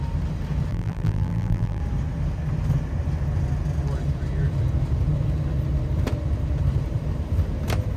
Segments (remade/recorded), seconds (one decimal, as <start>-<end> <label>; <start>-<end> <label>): 0.0-0.7 recorded; 0.7-1.8 remade; 1.8-8.0 recorded